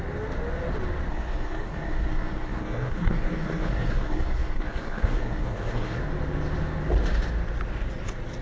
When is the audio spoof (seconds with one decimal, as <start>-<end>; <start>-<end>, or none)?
1.1-6.0

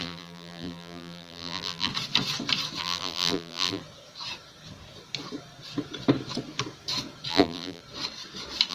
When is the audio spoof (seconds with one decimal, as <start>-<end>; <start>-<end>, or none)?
0.0-1.9; 2.8-3.8; 7.3-7.8

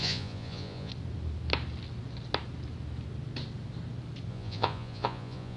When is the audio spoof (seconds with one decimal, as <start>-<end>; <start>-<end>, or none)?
0.0-0.9; 4.3-5.6

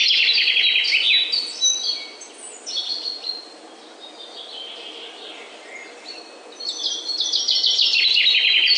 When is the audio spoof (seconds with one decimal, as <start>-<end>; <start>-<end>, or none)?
none